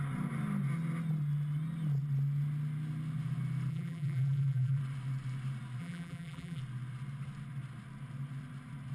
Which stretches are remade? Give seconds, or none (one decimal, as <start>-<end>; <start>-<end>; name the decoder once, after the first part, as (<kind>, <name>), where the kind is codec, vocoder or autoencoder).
3.7-4.8 (vocoder, BigVGAN v2); 5.8-6.6